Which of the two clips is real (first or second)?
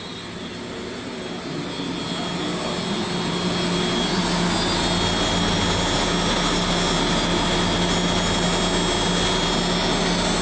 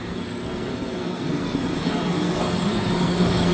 first